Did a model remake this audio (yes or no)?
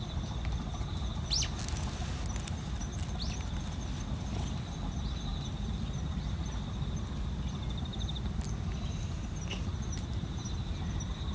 no